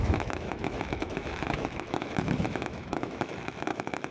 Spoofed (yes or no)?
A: yes